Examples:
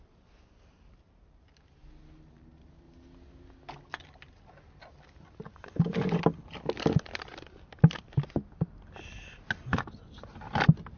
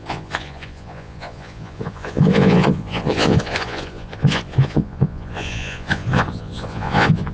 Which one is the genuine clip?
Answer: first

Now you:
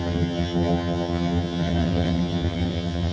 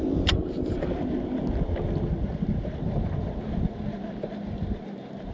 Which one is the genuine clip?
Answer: second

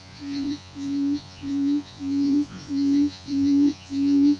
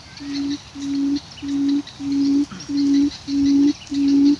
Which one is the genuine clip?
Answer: second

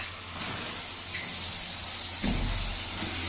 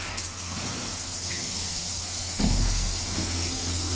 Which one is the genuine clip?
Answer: first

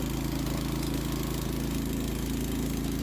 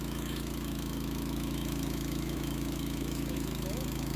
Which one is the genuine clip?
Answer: first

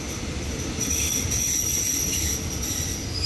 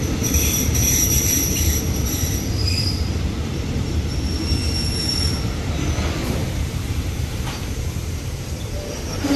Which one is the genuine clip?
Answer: first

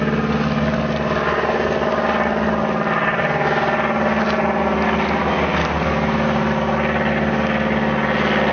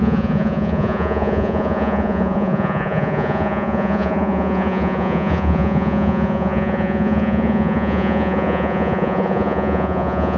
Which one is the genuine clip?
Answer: first